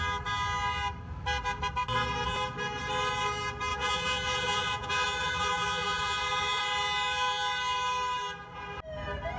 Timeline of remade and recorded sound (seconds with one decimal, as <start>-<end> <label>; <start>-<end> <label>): 0.0-3.7 recorded; 3.7-6.6 remade; 6.6-9.4 recorded